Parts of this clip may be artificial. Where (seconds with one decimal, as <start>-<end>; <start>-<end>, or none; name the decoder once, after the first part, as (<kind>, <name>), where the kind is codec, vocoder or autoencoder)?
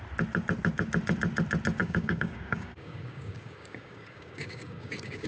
1.8-5.3 (codec, DAC)